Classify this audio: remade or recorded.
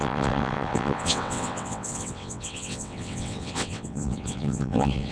remade